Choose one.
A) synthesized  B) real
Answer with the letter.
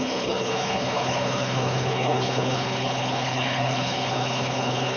A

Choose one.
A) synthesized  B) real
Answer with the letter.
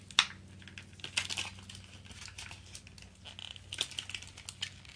B